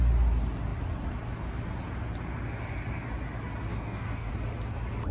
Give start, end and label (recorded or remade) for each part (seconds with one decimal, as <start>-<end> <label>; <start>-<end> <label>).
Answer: 0.0-3.7 recorded; 3.7-4.3 remade; 4.3-5.1 recorded